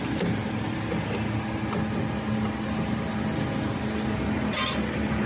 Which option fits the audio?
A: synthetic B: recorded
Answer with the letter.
B